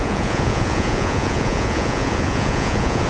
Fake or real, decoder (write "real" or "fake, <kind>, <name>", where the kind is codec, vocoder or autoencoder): fake, vocoder, Vocos